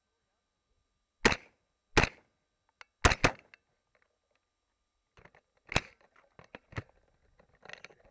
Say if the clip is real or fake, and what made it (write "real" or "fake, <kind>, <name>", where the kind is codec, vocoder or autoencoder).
real